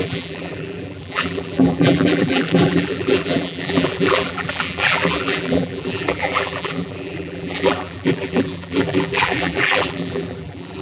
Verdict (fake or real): fake